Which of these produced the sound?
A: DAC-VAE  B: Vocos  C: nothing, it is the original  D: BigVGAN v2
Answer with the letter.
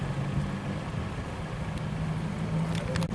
C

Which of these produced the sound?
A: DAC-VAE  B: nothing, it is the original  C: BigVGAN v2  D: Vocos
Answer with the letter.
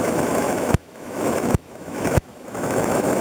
A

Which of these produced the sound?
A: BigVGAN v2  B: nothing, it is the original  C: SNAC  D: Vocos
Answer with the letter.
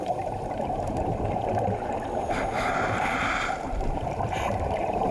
A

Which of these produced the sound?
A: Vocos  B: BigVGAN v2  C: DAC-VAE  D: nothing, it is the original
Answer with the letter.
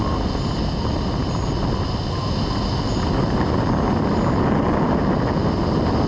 D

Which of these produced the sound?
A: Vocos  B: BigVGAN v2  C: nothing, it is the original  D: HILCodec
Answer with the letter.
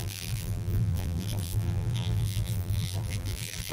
B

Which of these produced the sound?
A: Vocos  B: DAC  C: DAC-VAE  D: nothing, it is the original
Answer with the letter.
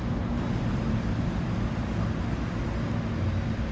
D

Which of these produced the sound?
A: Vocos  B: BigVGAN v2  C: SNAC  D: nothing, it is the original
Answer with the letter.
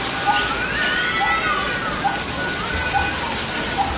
D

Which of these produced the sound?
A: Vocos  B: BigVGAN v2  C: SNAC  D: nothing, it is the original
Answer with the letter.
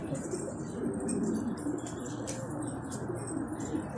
D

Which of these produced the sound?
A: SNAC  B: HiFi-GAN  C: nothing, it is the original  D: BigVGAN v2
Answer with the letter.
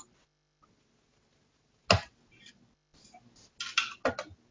C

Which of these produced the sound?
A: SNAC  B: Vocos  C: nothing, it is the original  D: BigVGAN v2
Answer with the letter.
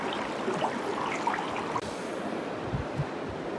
C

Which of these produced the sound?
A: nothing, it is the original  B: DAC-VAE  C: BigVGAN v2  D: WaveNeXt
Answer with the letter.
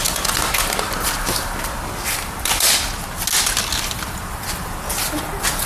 A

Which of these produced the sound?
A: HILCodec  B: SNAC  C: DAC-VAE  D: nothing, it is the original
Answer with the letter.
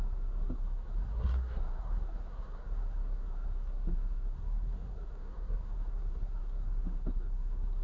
B